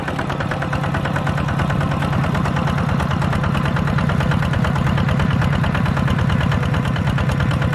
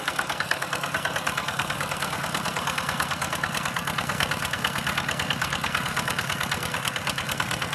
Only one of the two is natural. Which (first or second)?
first